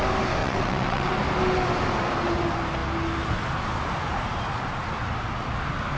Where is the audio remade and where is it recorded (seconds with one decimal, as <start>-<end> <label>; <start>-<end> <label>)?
0.0-0.4 recorded; 0.4-1.1 remade; 1.1-6.0 recorded